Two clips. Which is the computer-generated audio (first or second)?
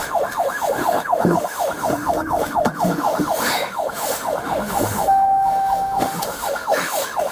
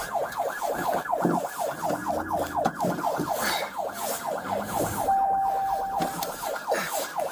first